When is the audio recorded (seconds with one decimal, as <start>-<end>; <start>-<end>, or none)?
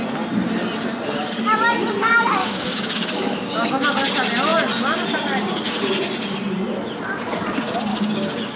0.0-2.4; 4.0-7.9